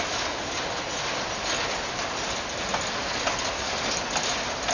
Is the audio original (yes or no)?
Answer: yes